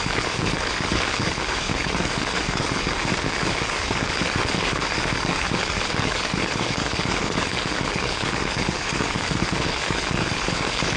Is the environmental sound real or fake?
fake